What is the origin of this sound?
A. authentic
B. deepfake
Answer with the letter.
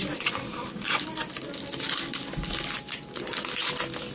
A